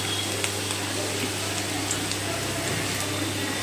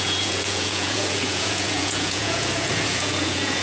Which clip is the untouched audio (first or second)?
first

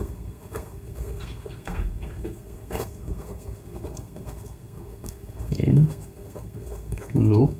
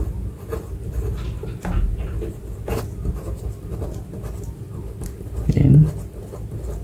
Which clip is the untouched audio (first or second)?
second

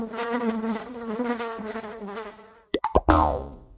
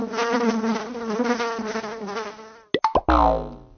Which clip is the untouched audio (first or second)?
second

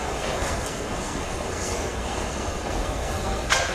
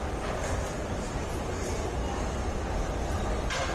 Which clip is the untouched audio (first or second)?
second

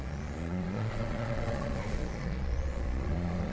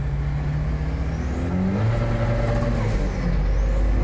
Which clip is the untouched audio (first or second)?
second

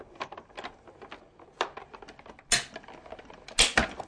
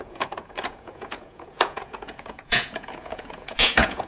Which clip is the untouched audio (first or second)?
first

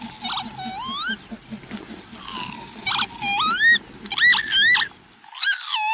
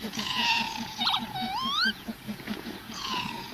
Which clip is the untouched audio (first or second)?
first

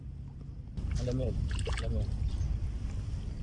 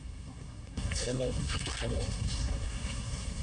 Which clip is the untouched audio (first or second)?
first